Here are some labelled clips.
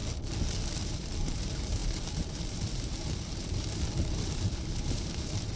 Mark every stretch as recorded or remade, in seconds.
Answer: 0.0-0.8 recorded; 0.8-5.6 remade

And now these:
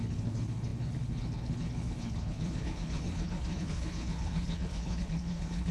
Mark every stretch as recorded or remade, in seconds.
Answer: 0.0-5.7 remade

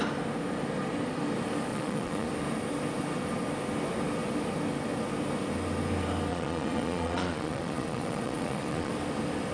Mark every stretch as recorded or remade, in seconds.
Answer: 0.0-1.7 recorded; 1.7-2.3 remade; 2.3-6.3 recorded; 6.3-8.9 remade; 8.9-9.5 recorded

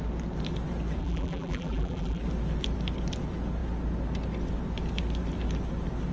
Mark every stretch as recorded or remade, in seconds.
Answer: 0.0-1.0 recorded; 1.0-2.2 remade; 2.2-6.1 recorded